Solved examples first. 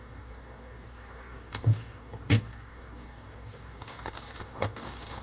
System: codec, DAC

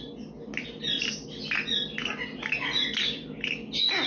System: none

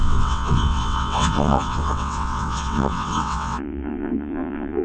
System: vocoder, WaveNeXt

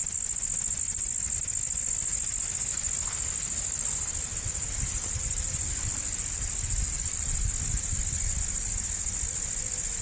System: none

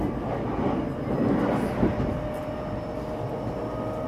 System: none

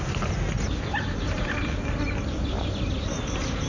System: none